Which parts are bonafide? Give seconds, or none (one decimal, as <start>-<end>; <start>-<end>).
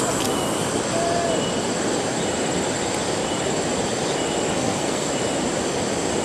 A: 0.0-4.5; 5.1-6.2